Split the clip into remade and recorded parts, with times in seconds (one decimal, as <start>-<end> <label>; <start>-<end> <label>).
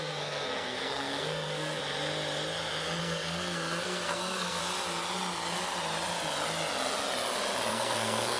0.0-1.8 remade; 1.8-3.0 recorded; 3.0-4.6 remade; 4.6-7.7 recorded; 7.7-8.4 remade